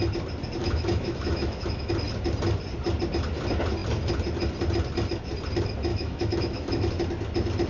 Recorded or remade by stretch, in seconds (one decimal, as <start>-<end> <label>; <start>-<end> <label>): 0.0-0.6 recorded; 0.6-1.9 remade; 1.9-5.9 recorded; 5.9-6.9 remade; 6.9-7.7 recorded